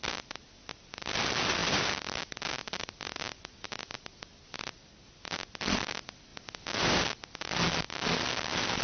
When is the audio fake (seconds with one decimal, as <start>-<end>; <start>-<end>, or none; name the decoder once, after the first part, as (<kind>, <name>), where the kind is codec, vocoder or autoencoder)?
none